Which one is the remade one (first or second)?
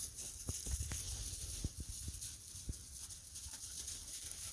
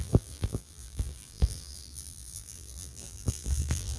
second